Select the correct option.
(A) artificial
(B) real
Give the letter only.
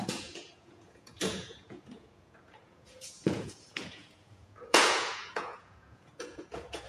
A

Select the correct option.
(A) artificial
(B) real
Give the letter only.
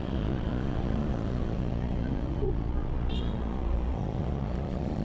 A